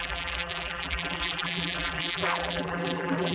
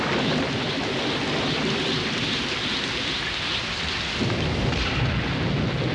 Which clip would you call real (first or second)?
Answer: second